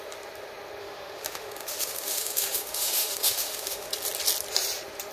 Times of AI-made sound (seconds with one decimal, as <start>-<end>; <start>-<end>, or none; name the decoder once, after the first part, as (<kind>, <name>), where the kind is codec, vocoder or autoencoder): 0.8-3.9 (autoencoder, DAC-VAE)

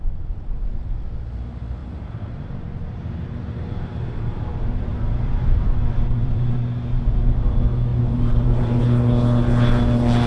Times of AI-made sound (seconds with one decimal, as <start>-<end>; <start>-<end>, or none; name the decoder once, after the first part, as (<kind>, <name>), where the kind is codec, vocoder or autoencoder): 1.8-6.5 (vocoder, BigVGAN v2); 7.9-8.8

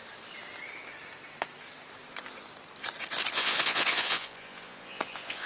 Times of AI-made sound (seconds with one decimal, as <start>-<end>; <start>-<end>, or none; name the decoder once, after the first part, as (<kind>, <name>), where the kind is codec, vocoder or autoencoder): 3.3-5.5 (vocoder, Vocos)

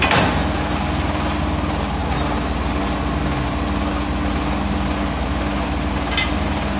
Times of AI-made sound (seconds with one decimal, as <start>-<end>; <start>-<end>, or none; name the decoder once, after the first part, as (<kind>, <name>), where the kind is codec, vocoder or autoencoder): none

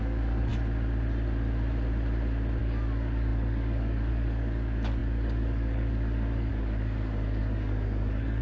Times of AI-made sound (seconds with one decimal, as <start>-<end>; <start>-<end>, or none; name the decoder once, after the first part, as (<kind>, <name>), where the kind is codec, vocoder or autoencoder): 0.0-0.5 (codec, DAC); 2.6-8.4